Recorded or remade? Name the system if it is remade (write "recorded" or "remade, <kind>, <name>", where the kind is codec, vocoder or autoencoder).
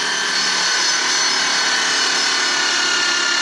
recorded